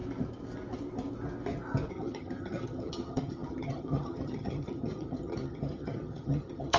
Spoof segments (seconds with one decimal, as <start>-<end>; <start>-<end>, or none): 1.9-6.8